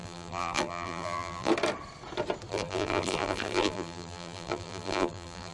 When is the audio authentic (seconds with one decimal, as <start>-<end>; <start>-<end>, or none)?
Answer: 1.5-2.5